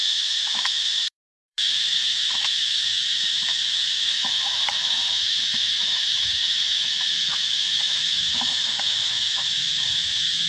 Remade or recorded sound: remade